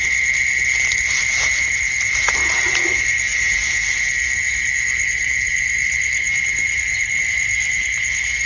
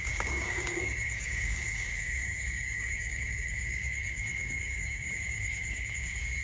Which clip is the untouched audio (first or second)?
first